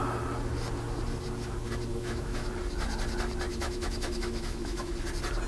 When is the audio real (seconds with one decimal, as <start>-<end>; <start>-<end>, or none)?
0.0-1.9; 2.5-3.5; 4.9-5.5